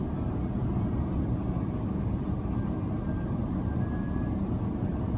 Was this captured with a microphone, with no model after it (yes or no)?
yes